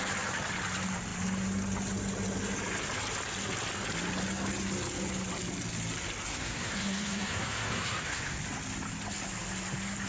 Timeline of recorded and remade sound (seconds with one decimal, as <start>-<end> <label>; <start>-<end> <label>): 0.0-6.3 recorded; 6.3-8.4 remade; 8.4-10.1 recorded